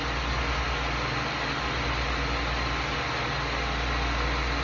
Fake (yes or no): no